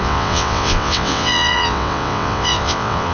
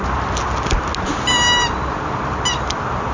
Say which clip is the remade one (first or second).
first